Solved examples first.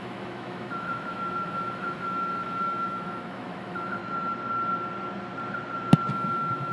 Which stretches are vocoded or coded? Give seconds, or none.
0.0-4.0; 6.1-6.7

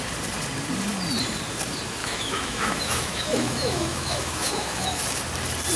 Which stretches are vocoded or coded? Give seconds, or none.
2.0-5.0

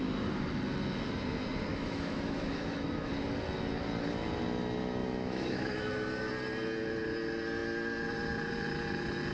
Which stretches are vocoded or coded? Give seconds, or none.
1.7-3.1; 5.0-6.3

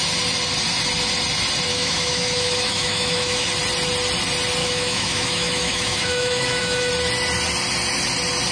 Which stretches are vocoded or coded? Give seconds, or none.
1.7-3.5; 4.6-6.9

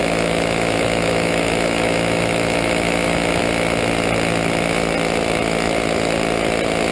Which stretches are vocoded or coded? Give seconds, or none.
0.0-3.4

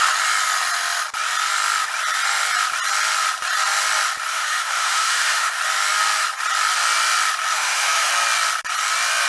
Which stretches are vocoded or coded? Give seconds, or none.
4.3-5.6; 7.5-8.1

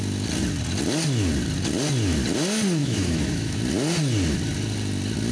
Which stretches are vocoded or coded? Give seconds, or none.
2.8-3.6